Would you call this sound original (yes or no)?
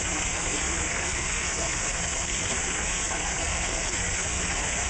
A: no